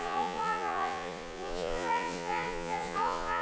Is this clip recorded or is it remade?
remade